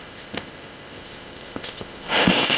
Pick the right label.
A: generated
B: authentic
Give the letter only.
A